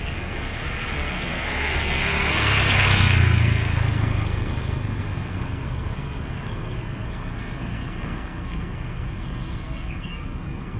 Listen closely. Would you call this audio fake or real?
fake